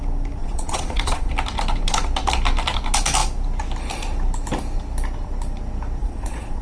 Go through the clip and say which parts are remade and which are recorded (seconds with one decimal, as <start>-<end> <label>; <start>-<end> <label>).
0.0-0.4 recorded; 0.4-1.3 remade; 1.3-6.0 recorded; 6.0-6.6 remade